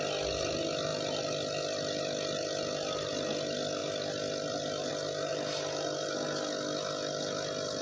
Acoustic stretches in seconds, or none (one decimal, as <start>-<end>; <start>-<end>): 0.0-7.8